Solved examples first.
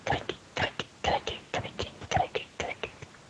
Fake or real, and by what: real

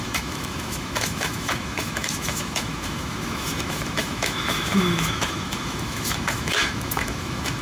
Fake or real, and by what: fake, autoencoder, DAC-VAE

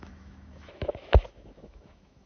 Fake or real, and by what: fake, autoencoder, DAC-VAE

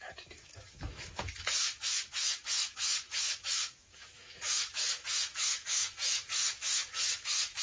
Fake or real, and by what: fake, autoencoder, DAC-VAE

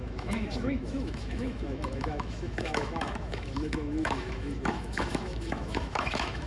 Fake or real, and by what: fake, autoencoder, DAC-VAE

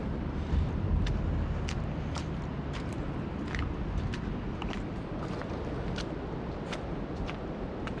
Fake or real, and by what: real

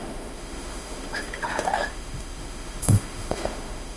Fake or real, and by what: fake, autoencoder, DAC-VAE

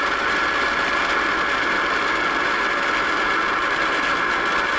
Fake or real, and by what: real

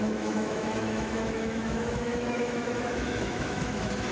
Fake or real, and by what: fake, autoencoder, DAC-VAE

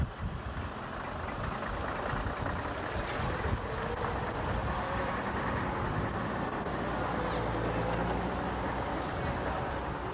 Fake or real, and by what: real